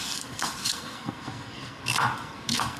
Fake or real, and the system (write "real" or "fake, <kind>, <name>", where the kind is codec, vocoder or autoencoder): fake, codec, SNAC